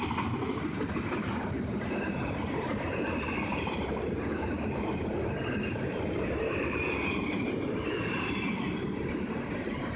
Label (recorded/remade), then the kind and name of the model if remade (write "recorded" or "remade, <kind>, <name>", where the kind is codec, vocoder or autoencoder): remade, vocoder, BigVGAN v2